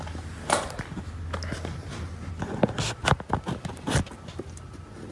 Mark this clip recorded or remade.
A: recorded